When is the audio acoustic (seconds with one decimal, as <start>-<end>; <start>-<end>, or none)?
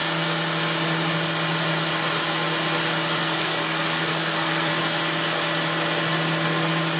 0.0-3.2; 4.7-7.0